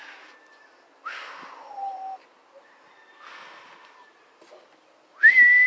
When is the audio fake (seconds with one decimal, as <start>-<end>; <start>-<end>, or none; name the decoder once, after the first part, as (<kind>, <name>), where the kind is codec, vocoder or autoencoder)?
none